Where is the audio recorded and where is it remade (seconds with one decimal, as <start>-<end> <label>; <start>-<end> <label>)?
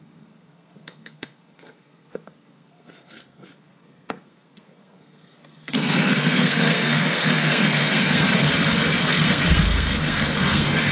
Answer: 0.0-8.4 remade; 8.4-9.0 recorded; 9.0-10.9 remade